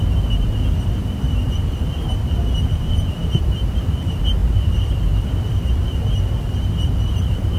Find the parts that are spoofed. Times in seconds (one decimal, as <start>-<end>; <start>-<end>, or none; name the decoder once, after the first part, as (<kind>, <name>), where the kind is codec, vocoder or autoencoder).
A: 0.0-7.6 (vocoder, BigVGAN v2)